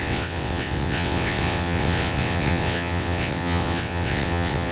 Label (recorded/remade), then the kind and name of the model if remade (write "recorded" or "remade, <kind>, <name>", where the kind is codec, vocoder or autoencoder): remade, vocoder, WaveNeXt